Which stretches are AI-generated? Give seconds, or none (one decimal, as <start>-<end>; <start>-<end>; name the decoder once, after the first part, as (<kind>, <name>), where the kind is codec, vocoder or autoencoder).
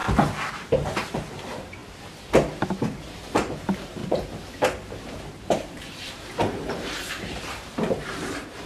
0.5-1.8 (vocoder, BigVGAN v2); 2.8-4.0; 4.9-8.7